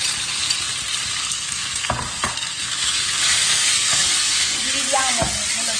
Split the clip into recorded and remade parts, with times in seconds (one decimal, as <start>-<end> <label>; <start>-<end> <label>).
0.0-1.2 recorded; 1.2-4.7 remade; 4.7-5.8 recorded